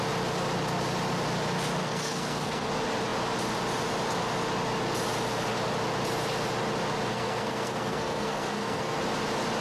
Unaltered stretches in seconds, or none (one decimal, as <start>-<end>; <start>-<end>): 0.0-1.8; 2.7-7.1; 9.0-9.6